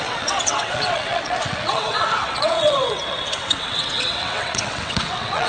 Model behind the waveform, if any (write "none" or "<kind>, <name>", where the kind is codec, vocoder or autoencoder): vocoder, WaveNeXt